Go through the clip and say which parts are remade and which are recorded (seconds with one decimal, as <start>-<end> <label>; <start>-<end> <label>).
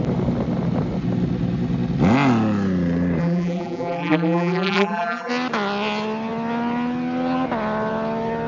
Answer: 0.0-3.2 recorded; 3.2-5.3 remade; 5.3-8.5 recorded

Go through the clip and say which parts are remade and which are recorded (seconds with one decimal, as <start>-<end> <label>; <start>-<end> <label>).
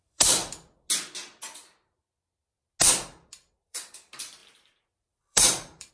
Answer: 0.0-0.4 remade; 0.4-3.5 recorded; 3.5-5.9 remade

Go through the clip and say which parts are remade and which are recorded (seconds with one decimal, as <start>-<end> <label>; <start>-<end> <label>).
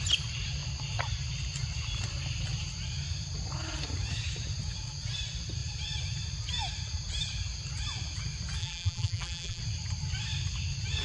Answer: 0.0-8.6 recorded; 8.6-9.6 remade; 9.6-11.0 recorded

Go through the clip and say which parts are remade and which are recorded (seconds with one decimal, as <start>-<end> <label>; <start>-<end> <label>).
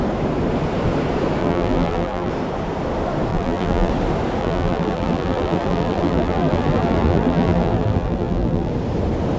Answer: 0.0-1.4 recorded; 1.4-2.3 remade; 2.3-3.3 recorded; 3.3-3.9 remade; 3.9-4.4 recorded; 4.4-8.7 remade; 8.7-9.4 recorded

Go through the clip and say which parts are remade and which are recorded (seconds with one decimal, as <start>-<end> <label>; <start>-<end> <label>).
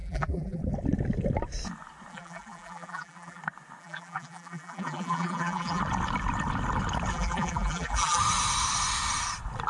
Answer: 0.0-0.6 remade; 0.6-2.1 recorded; 2.1-3.4 remade; 3.4-3.8 recorded; 3.8-5.8 remade; 5.8-7.1 recorded; 7.1-8.2 remade; 8.2-9.7 recorded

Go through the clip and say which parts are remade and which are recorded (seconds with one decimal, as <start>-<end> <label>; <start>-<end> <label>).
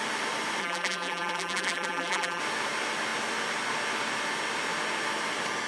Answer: 0.0-0.6 recorded; 0.6-2.4 remade; 2.4-5.7 recorded